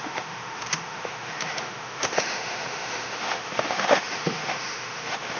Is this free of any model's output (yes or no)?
no